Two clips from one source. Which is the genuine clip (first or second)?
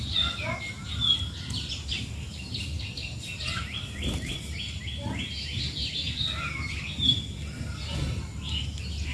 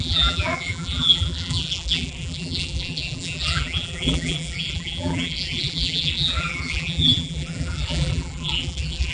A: first